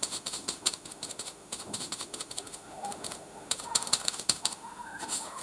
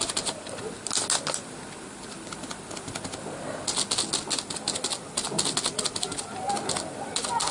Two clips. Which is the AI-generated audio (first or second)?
first